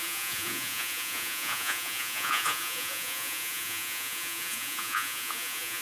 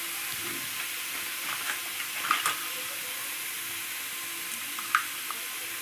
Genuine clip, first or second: second